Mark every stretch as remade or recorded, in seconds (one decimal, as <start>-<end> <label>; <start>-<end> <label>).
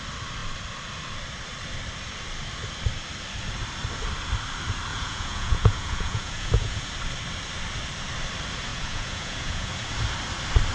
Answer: 0.0-4.9 recorded; 4.9-6.9 remade; 6.9-8.7 recorded; 8.7-9.9 remade; 9.9-10.7 recorded